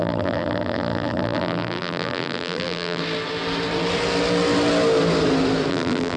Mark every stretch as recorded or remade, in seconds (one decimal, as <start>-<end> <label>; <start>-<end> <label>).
0.0-3.0 remade; 3.0-5.7 recorded; 5.7-6.2 remade